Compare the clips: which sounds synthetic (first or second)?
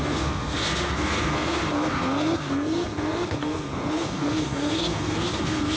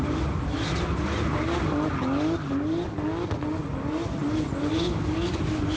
first